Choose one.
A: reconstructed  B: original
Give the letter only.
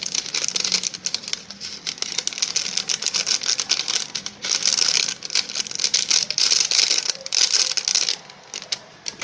B